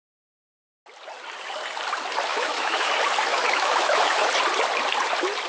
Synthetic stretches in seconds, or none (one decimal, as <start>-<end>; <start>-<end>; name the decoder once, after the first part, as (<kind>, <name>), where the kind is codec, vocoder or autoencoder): 2.3-2.9 (autoencoder, DAC-VAE); 3.3-4.3